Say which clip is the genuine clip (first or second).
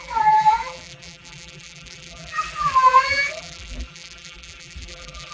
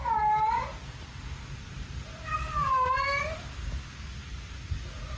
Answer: second